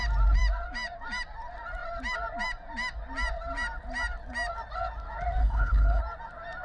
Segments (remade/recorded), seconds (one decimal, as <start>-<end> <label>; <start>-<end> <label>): 0.0-5.4 recorded; 5.4-6.0 remade; 6.0-6.6 recorded